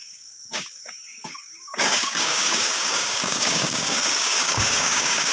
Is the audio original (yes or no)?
no